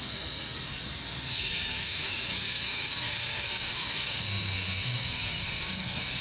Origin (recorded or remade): remade